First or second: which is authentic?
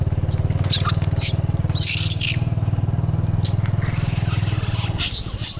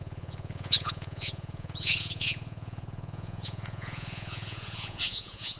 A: first